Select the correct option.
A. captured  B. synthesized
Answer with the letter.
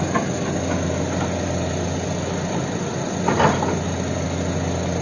A